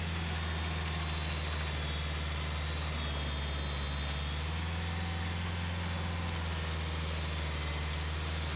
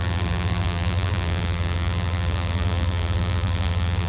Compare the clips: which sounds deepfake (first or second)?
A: second